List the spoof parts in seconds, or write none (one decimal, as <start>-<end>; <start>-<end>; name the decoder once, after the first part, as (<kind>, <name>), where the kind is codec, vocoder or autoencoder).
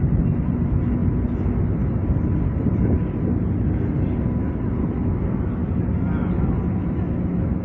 none